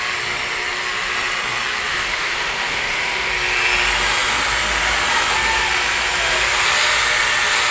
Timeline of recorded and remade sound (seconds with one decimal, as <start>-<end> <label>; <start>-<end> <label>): 0.0-1.9 recorded; 1.9-3.3 remade; 3.3-7.7 recorded